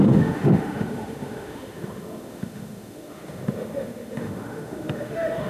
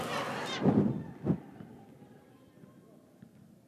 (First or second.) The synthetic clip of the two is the first